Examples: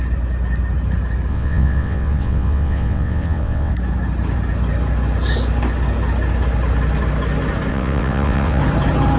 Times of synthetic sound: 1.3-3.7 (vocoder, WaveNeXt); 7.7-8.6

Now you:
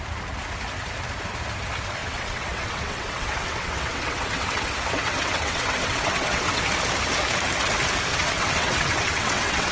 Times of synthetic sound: 2.0-6.6 (vocoder, WaveNeXt); 8.1-9.7

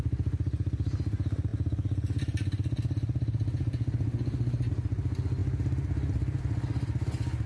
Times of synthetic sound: none